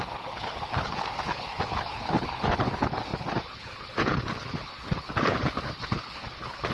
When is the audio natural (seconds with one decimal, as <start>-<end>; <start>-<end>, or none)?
none